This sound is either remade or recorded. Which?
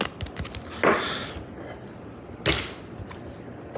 recorded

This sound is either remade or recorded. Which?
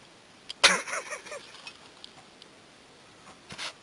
recorded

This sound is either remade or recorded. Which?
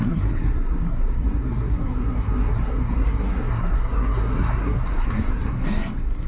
remade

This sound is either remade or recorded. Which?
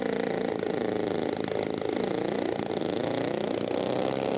recorded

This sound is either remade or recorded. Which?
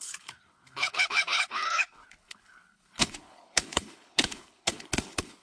remade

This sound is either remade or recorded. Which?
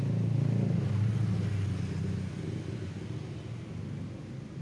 recorded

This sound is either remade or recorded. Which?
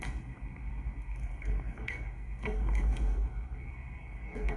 remade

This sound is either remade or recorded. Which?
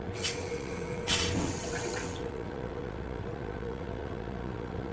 remade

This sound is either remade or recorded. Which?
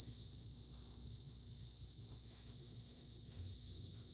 remade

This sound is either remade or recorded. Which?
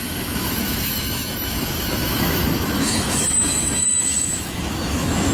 remade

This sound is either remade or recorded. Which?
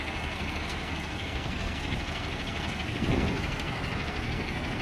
remade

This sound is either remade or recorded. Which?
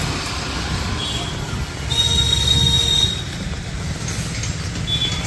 recorded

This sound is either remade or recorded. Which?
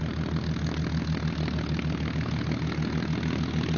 recorded